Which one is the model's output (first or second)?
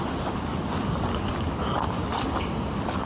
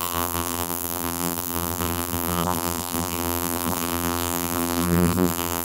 second